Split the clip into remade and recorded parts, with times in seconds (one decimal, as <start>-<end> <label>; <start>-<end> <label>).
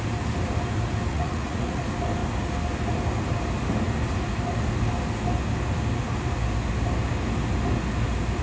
0.0-1.1 recorded; 1.1-1.8 remade; 1.8-8.4 recorded